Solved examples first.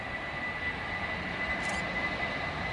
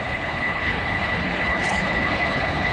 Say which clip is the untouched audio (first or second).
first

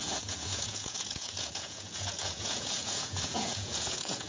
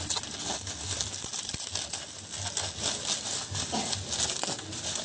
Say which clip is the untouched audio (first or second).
second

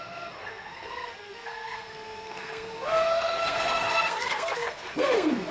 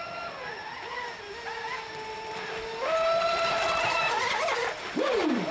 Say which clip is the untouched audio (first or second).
second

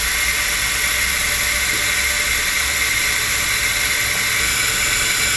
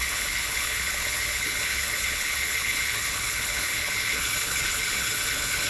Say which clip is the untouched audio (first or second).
first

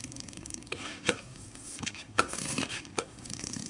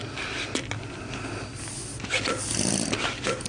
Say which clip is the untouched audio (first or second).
second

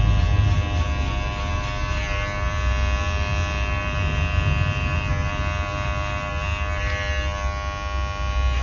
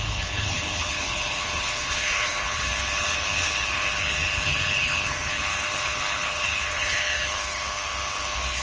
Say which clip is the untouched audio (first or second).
first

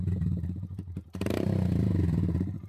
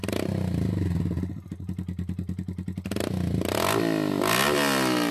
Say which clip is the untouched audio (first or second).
second